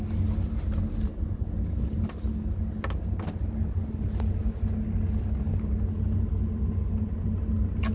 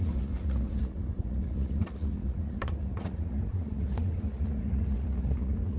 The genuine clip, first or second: first